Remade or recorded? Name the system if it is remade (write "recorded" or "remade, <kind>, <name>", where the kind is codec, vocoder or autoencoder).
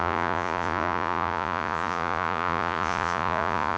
remade, vocoder, Vocos